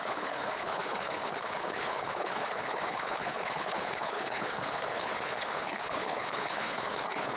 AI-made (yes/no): yes